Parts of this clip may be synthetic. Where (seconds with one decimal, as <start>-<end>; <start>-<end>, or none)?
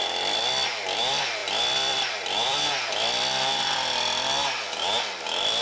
0.0-5.6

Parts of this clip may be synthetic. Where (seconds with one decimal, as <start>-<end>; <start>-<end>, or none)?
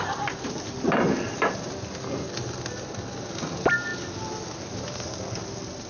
none